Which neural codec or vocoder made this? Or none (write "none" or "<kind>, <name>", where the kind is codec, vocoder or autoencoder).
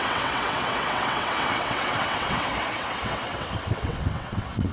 vocoder, WaveNeXt